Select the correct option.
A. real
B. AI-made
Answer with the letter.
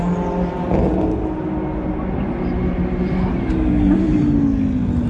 A